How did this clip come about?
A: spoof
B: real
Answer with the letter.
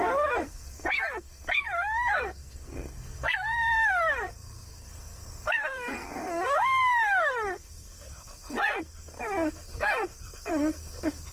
A